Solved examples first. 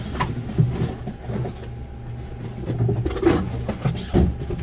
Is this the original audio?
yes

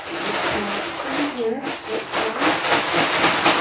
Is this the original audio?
yes